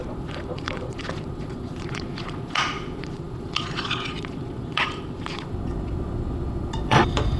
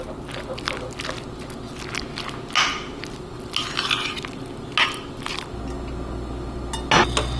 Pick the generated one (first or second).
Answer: first